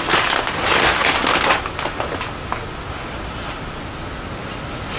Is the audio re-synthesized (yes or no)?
no